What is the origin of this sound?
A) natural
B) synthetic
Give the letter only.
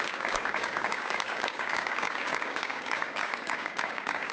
B